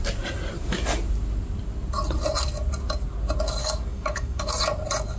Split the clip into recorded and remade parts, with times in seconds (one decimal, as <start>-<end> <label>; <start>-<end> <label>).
0.0-3.6 recorded; 3.6-4.5 remade; 4.5-5.2 recorded